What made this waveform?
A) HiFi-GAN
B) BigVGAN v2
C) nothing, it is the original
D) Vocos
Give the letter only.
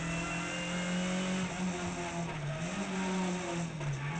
C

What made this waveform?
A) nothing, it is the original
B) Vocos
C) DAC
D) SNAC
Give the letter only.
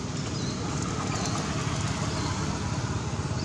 A